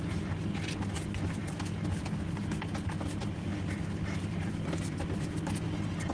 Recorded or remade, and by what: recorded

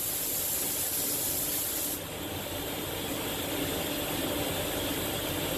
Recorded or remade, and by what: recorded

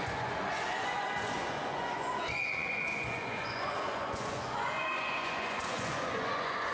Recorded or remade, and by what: remade, vocoder, Vocos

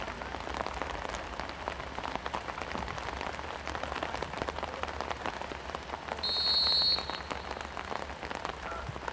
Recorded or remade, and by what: recorded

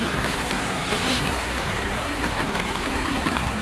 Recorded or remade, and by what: remade, codec, SNAC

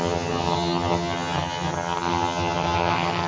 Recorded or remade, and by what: remade, vocoder, HiFi-GAN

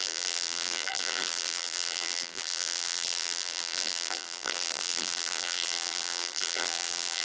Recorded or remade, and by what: remade, vocoder, BigVGAN v2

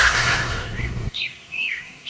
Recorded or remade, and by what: remade, codec, SNAC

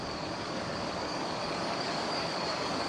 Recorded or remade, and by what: remade, codec, DAC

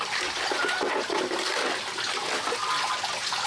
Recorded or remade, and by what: recorded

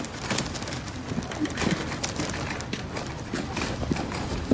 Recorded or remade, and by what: remade, vocoder, BigVGAN v2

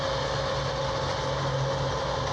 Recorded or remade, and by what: recorded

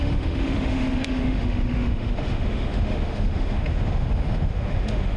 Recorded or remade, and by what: remade, autoencoder, DAC-VAE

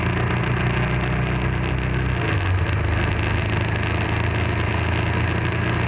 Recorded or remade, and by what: recorded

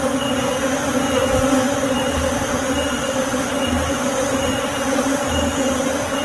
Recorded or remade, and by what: recorded